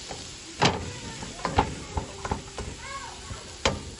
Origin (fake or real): real